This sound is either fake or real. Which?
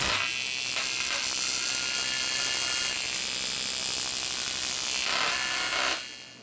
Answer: real